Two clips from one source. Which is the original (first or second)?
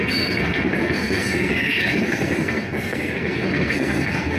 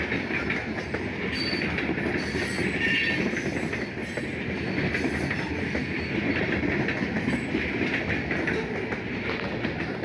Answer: second